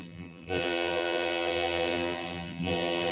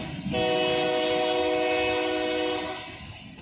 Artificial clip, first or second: first